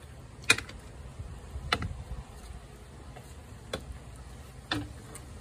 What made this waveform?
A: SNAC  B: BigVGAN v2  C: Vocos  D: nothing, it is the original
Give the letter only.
D